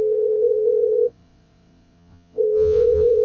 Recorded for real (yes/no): no